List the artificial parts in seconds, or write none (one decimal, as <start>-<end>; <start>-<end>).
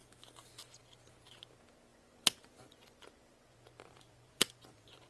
1.9-5.1